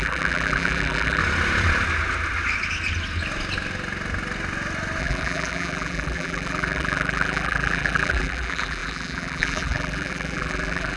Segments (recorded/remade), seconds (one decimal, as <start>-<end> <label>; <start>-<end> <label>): 0.0-1.2 remade; 1.2-5.0 recorded; 5.0-11.0 remade

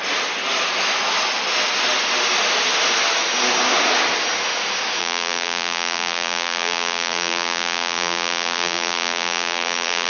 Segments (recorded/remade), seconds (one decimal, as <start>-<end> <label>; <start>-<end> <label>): 0.0-5.0 recorded; 5.0-10.1 remade